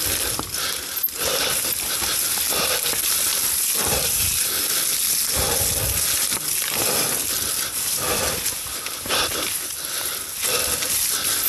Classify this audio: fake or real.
real